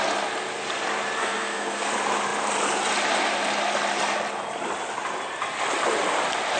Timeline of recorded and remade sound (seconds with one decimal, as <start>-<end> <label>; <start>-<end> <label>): 0.0-1.2 recorded; 1.2-1.9 remade; 1.9-6.6 recorded